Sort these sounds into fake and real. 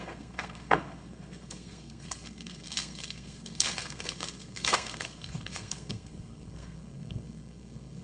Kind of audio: fake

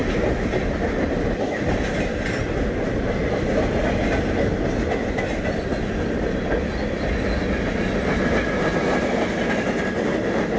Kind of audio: real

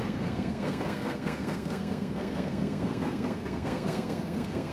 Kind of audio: fake